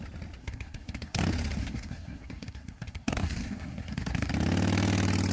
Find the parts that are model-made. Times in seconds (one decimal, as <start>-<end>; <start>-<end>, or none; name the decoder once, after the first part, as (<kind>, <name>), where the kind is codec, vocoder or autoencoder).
0.4-1.2 (codec, SNAC); 1.6-4.3